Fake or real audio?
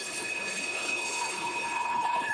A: fake